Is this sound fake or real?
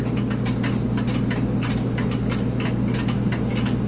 real